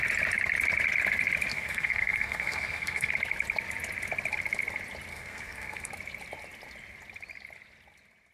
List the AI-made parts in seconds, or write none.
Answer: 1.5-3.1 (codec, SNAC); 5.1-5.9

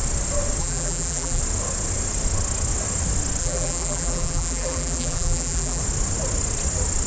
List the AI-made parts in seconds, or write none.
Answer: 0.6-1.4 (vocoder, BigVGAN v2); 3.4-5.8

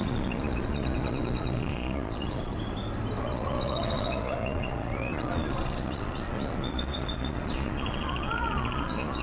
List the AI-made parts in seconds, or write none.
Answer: 0.0-2.5 (vocoder, Vocos); 3.2-9.2

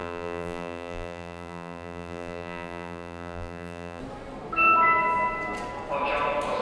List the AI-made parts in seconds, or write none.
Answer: 0.0-4.0 (vocoder, BigVGAN v2)

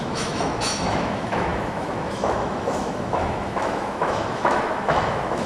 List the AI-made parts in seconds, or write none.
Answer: 0.0-5.5 (autoencoder, DAC-VAE)

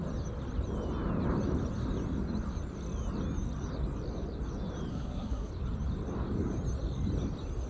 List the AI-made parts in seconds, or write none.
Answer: 4.9-5.5 (codec, SNAC)

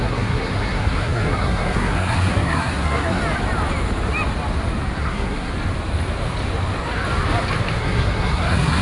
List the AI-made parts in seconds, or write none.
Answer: 0.0-3.2 (codec, SNAC); 5.0-5.5; 7.8-8.8